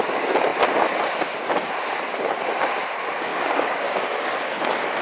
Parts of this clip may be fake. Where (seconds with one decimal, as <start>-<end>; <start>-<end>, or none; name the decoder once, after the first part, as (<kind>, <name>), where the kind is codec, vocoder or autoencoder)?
3.3-4.6 (codec, DAC)